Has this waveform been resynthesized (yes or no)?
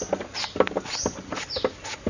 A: no